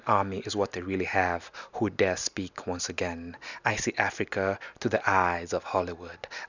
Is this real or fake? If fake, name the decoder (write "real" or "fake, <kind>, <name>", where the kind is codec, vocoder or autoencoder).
real